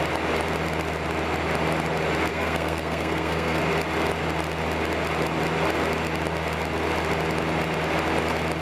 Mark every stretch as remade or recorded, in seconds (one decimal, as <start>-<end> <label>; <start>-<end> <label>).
0.0-2.3 recorded; 2.3-3.6 remade; 3.6-8.6 recorded